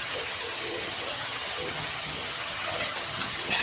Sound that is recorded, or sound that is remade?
remade